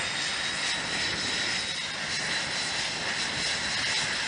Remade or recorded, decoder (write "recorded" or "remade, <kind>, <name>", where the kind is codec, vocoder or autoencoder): recorded